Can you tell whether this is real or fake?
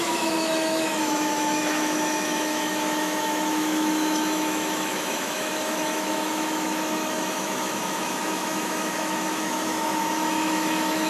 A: fake